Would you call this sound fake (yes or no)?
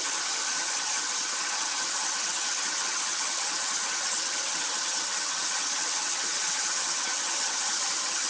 yes